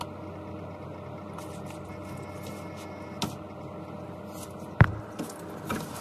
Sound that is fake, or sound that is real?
real